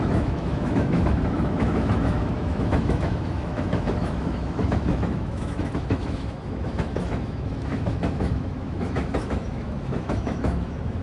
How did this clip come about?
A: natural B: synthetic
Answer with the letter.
B